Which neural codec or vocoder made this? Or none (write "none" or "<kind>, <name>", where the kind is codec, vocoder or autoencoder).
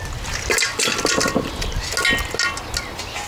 none